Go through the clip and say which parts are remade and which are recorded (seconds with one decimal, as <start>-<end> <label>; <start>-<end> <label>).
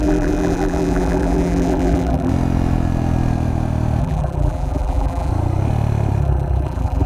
0.0-2.3 remade; 2.3-4.0 recorded; 4.0-5.3 remade; 5.3-6.2 recorded; 6.2-7.1 remade